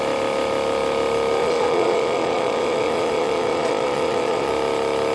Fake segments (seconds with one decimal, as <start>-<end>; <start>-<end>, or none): 1.4-4.5